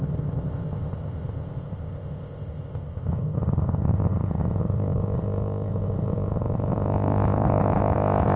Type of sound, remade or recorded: remade